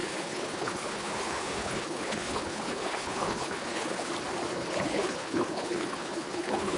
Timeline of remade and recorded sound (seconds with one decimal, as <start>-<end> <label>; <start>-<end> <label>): 0.0-4.1 remade; 4.1-4.5 recorded; 4.5-6.8 remade